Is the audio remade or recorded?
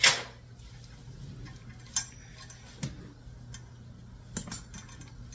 recorded